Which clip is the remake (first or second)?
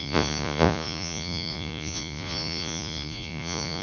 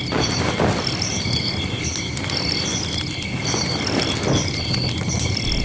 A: first